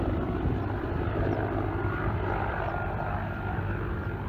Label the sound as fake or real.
fake